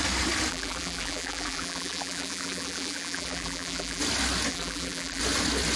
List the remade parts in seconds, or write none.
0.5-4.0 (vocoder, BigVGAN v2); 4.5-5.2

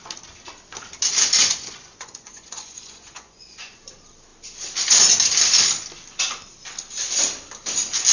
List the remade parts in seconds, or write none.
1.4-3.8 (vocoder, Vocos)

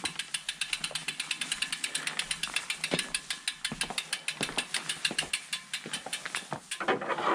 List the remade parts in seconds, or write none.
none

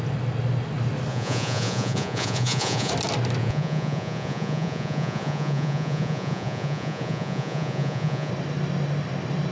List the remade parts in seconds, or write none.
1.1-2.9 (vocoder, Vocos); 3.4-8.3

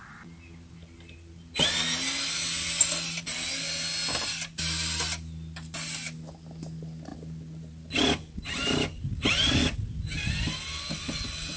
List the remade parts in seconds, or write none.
none

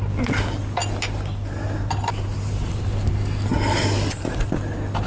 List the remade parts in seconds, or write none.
none

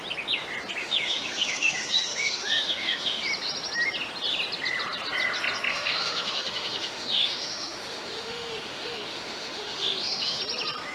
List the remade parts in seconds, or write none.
0.8-3.2 (autoencoder, DAC-VAE); 5.7-10.4